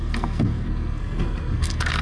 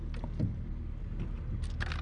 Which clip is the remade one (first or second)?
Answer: first